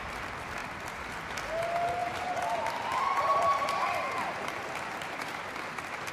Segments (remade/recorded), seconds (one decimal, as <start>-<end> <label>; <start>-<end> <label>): 0.0-2.0 recorded; 2.0-5.5 remade; 5.5-6.1 recorded